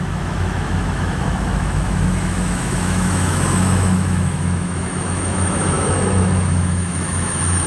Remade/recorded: remade